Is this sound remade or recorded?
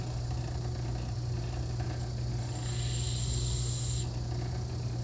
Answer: recorded